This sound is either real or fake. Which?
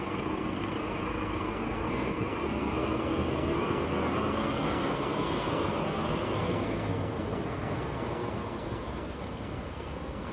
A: fake